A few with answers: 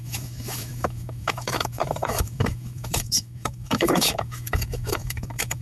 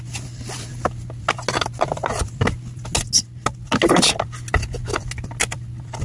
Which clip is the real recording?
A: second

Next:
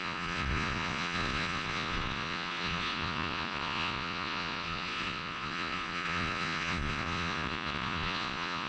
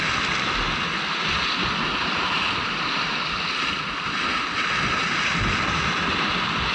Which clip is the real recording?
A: second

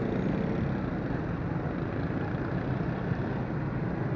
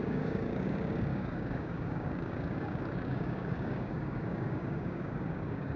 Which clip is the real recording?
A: first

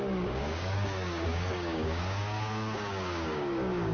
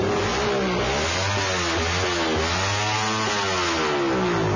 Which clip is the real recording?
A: second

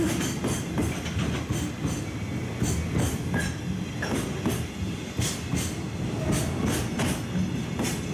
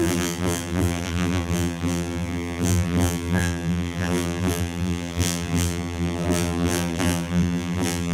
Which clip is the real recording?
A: first